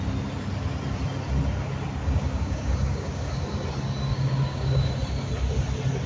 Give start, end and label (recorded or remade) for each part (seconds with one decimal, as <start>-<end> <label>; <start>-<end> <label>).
0.0-2.0 recorded; 2.0-3.3 remade; 3.3-4.1 recorded; 4.1-4.9 remade; 4.9-6.1 recorded